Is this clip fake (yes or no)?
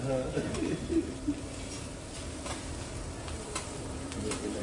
yes